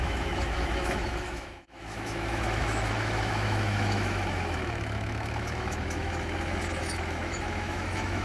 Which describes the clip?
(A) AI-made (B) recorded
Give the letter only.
A